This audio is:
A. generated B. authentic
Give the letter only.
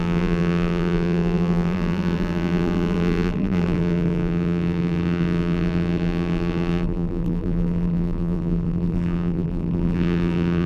A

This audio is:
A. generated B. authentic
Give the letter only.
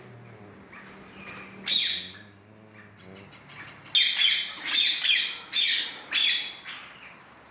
B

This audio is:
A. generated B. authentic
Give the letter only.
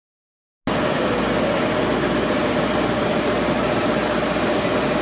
B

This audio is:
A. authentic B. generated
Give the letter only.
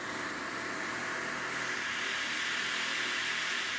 A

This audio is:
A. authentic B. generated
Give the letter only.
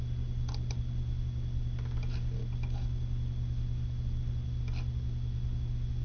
A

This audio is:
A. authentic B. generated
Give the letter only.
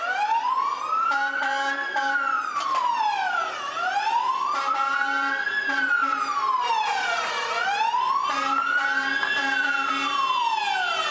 B